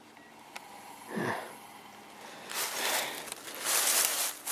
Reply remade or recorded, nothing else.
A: recorded